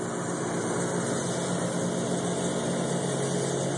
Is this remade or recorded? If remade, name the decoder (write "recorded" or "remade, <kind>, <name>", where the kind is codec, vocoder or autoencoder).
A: recorded